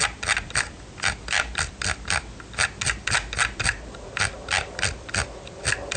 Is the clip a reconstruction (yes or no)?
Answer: no